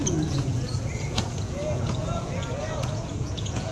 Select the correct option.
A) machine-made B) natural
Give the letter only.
A